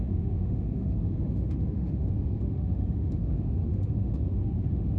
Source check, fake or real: fake